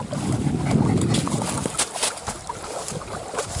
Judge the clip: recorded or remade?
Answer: recorded